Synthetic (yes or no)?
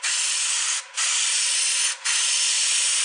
no